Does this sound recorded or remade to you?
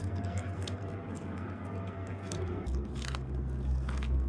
remade